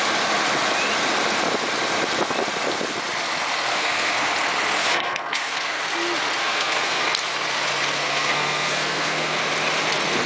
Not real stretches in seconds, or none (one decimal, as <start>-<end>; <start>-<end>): 3.7-4.3; 4.8-5.8; 6.4-7.0; 8.0-9.4